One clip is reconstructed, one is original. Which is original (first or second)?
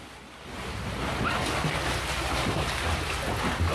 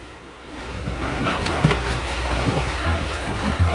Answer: first